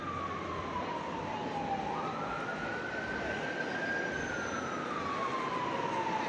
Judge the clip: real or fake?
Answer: real